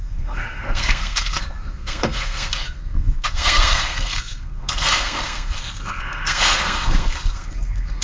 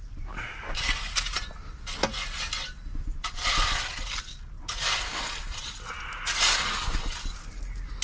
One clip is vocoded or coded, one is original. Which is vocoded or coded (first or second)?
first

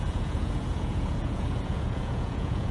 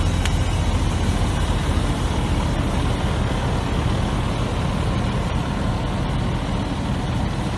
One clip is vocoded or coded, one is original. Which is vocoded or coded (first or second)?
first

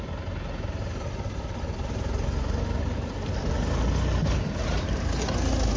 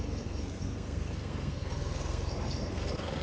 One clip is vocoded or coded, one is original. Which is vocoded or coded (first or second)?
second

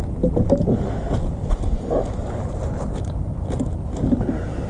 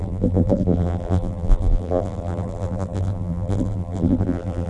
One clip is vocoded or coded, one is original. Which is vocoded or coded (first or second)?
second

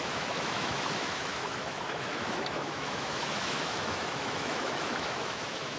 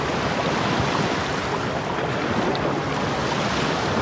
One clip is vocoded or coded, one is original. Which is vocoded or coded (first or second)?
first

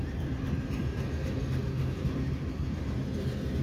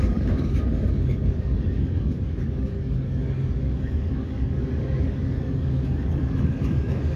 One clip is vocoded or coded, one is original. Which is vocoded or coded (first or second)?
second